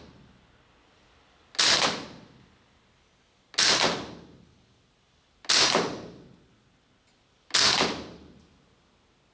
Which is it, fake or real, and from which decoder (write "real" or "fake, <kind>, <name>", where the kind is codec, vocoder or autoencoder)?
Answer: real